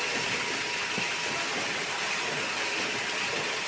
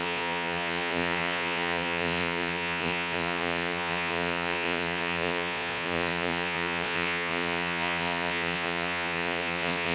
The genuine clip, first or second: first